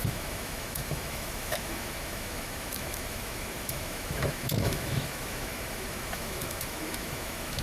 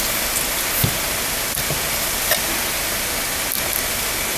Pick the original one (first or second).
second